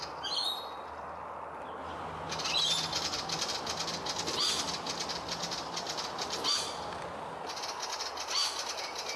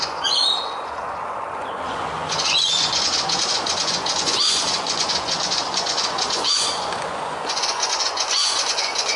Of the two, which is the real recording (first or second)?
first